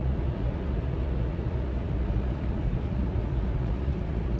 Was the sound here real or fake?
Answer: fake